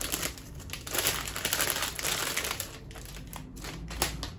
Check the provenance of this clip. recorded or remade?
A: recorded